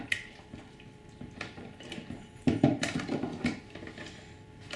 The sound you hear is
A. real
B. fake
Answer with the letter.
B